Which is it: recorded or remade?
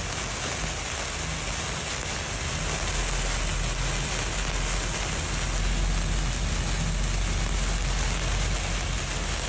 recorded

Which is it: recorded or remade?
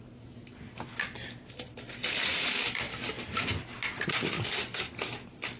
recorded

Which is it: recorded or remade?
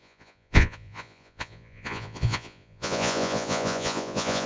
remade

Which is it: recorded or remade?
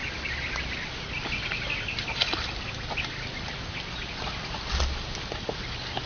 recorded